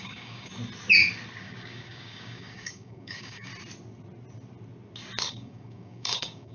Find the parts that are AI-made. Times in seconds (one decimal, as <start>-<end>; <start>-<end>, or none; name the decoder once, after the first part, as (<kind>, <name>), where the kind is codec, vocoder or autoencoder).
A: 0.0-0.5 (codec, DAC); 1.4-3.5; 5.3-6.5